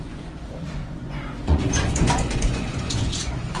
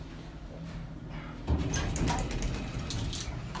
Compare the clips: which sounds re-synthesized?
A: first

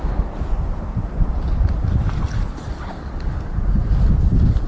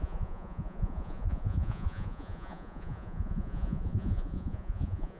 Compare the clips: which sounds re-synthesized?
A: second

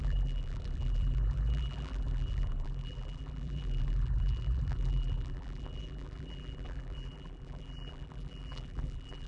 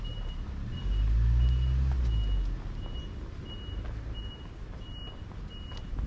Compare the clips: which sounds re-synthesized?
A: first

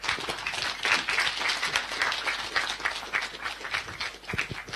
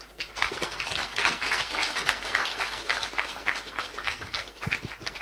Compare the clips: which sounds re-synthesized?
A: second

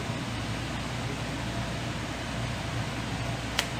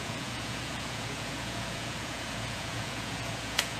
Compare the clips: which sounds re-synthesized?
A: second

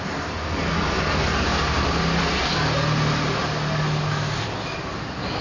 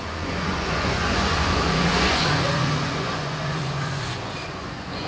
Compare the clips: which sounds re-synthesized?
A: second